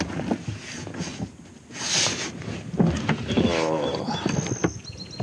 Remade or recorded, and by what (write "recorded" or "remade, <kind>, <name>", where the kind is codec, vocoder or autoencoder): recorded